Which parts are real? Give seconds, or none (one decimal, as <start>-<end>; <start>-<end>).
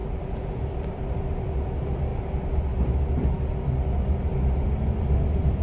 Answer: 2.1-5.6